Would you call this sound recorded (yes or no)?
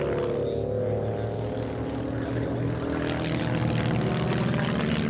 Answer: yes